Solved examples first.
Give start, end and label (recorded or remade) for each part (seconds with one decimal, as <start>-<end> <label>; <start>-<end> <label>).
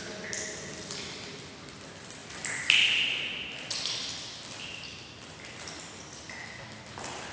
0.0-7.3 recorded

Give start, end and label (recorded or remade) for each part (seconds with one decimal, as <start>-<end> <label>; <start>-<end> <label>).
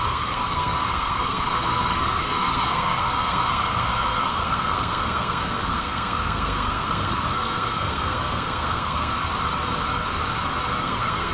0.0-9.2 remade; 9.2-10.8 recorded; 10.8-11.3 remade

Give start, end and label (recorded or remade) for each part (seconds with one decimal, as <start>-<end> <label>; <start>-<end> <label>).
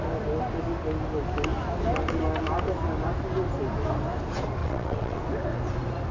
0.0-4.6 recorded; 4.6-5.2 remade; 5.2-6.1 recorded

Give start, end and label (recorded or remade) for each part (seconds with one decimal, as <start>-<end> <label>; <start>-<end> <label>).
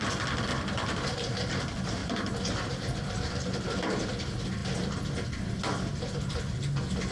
0.0-0.5 recorded; 0.5-1.6 remade; 1.6-2.0 recorded; 2.0-4.1 remade; 4.1-7.1 recorded